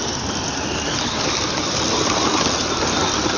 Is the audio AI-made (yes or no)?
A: no